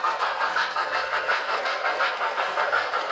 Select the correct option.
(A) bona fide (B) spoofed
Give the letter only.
B